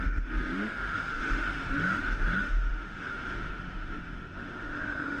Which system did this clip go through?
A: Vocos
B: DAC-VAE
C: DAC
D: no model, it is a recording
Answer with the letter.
B